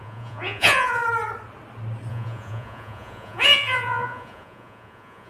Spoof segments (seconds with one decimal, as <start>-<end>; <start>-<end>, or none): 0.0-1.0; 2.1-5.3